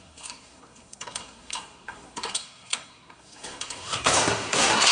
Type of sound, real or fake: fake